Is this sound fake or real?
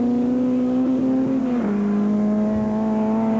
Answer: real